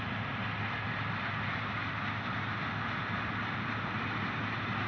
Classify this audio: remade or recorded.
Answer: recorded